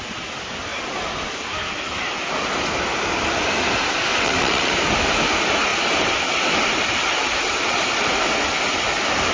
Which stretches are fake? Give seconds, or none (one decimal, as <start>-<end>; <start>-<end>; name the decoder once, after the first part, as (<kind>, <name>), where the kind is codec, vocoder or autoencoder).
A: 4.1-4.7 (vocoder, WaveNeXt)

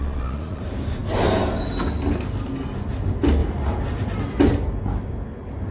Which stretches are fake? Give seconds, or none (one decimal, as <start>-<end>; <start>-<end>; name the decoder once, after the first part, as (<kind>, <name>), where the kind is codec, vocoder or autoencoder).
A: 0.0-0.6 (vocoder, Vocos)

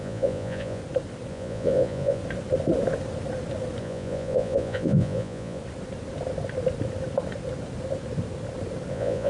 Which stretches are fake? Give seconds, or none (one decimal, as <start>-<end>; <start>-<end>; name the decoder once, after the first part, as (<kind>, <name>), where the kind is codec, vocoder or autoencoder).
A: 0.0-0.8 (vocoder, Vocos); 1.3-2.2; 3.8-5.6; 8.9-9.3

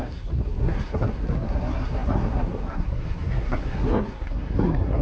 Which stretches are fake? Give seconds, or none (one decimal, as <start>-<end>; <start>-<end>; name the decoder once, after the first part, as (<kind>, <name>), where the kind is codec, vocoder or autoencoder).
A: 0.0-5.0 (codec, SNAC)